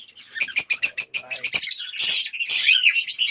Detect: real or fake real